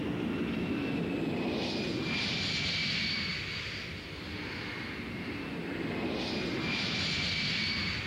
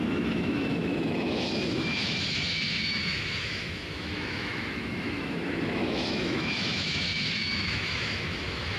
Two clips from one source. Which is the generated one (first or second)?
second